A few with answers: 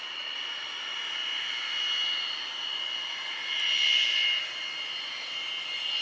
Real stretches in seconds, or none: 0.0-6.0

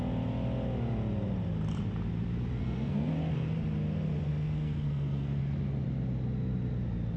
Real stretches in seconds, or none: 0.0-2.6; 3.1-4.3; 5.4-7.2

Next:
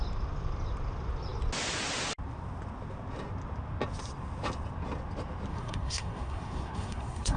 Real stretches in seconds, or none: 0.0-5.5

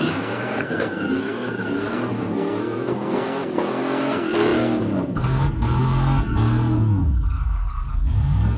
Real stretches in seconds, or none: none

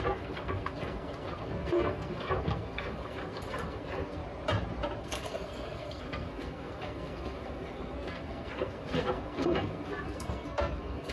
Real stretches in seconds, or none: 4.2-5.0